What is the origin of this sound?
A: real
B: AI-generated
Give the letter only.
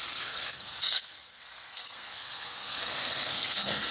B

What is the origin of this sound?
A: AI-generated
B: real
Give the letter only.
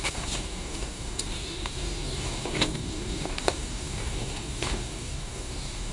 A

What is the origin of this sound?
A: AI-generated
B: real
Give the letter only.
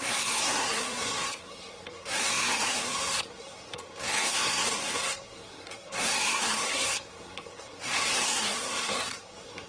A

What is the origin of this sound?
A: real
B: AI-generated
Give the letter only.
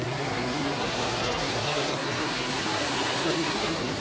B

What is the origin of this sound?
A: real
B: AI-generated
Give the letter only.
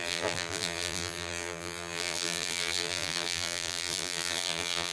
B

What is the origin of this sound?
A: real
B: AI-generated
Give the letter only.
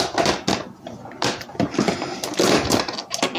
A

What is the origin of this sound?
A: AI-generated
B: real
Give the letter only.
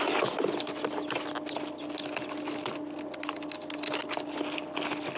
B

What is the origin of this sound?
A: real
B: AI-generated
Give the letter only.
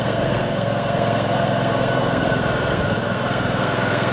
B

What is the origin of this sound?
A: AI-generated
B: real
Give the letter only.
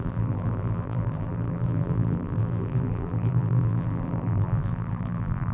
A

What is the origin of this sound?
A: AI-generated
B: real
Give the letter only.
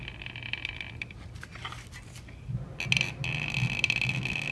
B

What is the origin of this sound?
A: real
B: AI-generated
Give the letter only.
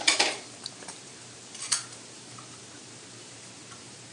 B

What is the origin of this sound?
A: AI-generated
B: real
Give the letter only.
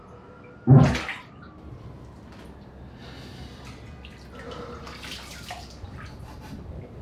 B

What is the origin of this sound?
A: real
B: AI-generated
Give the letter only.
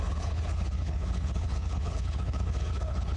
B